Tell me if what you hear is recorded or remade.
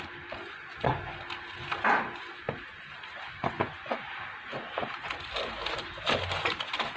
recorded